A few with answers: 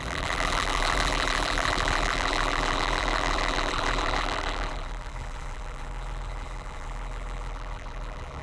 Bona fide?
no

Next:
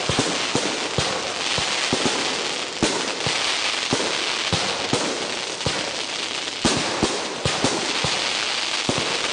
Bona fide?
yes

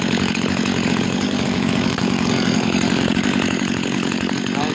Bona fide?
no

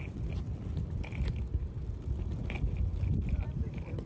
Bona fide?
yes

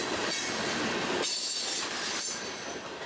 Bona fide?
yes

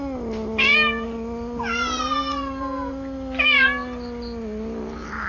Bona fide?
yes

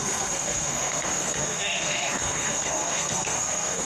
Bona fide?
no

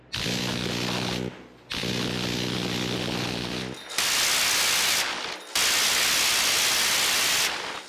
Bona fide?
yes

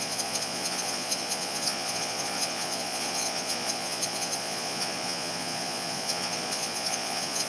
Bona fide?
no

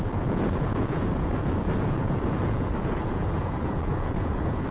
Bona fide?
no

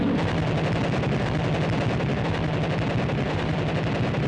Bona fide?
no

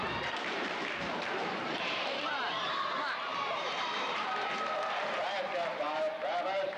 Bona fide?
no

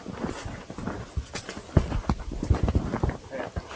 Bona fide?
yes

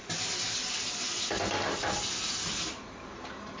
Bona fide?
yes